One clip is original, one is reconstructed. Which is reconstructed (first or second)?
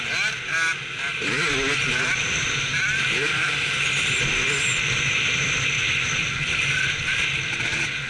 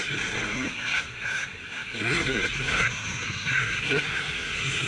second